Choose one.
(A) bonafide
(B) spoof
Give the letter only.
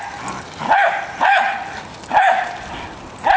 A